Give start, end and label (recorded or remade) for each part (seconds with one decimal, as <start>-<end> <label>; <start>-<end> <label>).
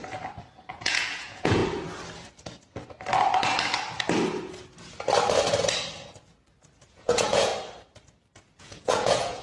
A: 0.0-0.7 recorded; 0.7-1.6 remade; 1.6-6.9 recorded; 6.9-7.5 remade; 7.5-8.6 recorded; 8.6-9.4 remade